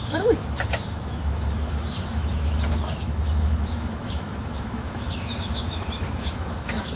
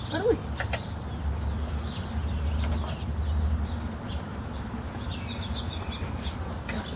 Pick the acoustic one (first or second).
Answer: second